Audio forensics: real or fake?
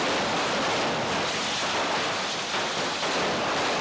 real